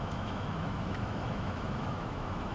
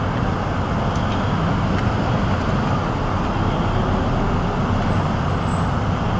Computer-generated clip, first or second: first